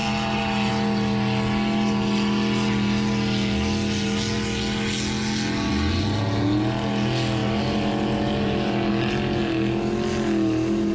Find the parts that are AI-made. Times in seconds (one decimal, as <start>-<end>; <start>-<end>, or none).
none